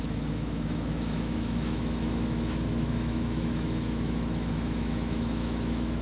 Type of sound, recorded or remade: remade